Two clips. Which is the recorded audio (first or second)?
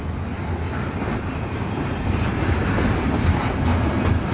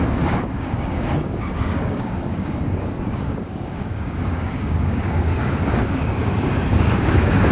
first